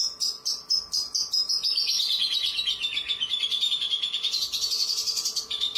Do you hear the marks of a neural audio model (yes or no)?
yes